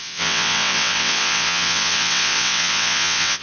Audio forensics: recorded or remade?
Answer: remade